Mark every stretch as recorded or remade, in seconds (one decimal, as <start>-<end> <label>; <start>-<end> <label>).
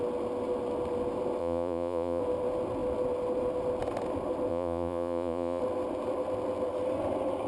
0.0-1.4 recorded; 1.4-2.2 remade; 2.2-4.5 recorded; 4.5-5.6 remade; 5.6-7.5 recorded